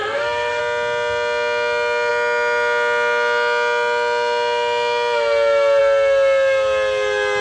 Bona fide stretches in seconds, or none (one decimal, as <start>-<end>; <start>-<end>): 0.6-7.4